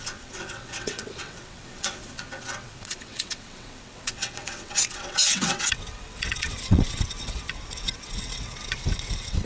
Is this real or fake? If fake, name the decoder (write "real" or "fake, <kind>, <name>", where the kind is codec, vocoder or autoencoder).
fake, vocoder, WaveNeXt